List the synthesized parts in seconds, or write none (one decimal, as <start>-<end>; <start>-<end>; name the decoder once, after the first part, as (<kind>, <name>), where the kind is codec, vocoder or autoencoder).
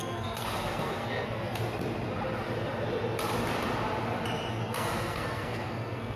0.0-1.6 (codec, SNAC); 4.5-6.2